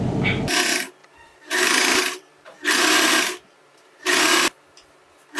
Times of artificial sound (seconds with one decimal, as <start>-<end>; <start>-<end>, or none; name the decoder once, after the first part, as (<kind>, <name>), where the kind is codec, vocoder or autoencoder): 1.0-4.2 (vocoder, BigVGAN v2)